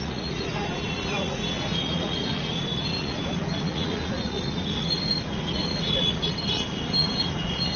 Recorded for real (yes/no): no